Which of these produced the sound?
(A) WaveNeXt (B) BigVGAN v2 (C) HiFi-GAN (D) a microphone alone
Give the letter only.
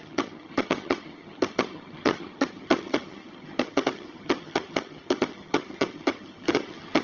C